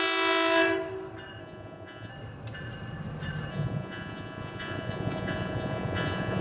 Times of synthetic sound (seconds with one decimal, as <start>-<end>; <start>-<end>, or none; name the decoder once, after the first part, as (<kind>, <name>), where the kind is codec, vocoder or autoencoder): 1.4-2.1 (vocoder, Vocos); 3.5-6.4